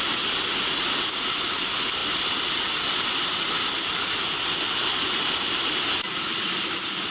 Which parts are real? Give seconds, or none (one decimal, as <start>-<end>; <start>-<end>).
0.0-7.1